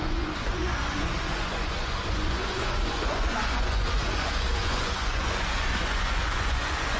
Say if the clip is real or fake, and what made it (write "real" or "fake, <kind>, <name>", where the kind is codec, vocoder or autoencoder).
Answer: fake, vocoder, Vocos